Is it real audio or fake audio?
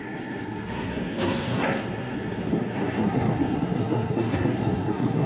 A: fake